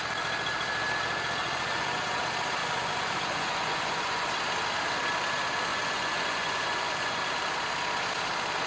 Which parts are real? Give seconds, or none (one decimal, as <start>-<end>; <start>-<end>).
0.0-1.4; 2.2-2.6; 4.3-5.7; 7.2-8.7